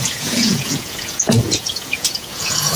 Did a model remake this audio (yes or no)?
yes